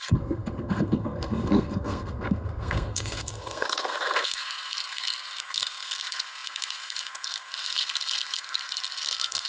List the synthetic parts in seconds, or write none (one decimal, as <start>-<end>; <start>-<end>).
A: 0.0-9.5